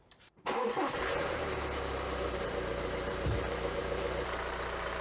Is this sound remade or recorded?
remade